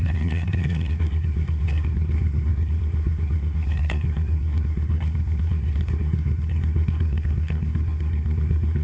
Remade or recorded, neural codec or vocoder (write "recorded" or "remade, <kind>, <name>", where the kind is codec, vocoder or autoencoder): remade, codec, SNAC